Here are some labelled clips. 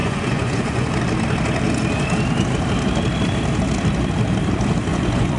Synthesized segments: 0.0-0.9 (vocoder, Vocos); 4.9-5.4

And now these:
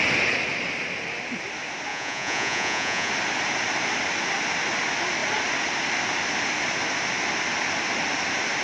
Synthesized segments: 1.9-3.1 (vocoder, Vocos)

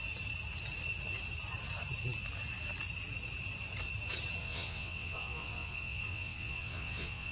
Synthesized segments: 4.4-7.3 (vocoder, WaveNeXt)

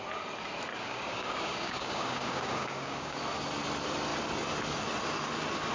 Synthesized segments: 0.7-3.2 (codec, DAC)

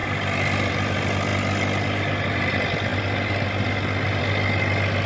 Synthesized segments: none